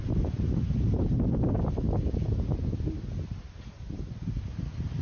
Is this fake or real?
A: real